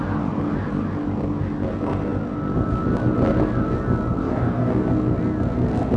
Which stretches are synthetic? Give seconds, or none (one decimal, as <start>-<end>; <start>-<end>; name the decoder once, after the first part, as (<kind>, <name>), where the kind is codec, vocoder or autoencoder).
4.2-4.8 (codec, DAC)